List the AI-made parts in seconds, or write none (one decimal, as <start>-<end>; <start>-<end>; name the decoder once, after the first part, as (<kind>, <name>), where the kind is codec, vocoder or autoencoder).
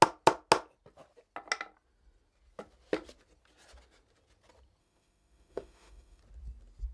4.8-6.2 (autoencoder, DAC-VAE)